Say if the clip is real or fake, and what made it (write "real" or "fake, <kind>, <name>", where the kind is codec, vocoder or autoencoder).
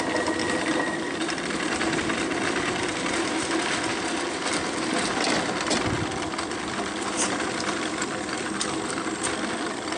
real